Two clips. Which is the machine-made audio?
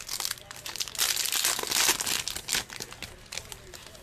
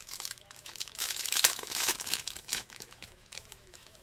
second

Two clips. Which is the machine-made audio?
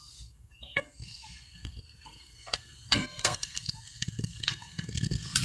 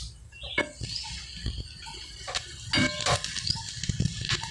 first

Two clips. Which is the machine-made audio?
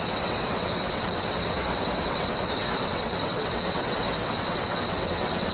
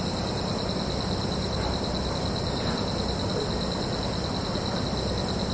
first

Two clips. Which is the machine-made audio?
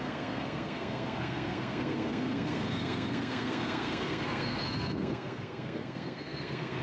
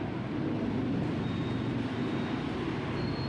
first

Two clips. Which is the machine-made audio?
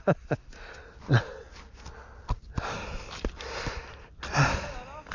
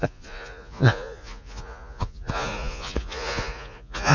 second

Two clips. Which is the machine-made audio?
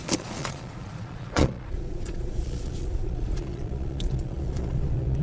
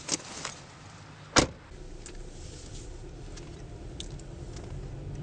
first